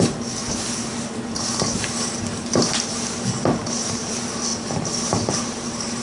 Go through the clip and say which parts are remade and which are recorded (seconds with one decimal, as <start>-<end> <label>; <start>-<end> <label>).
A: 0.0-6.0 recorded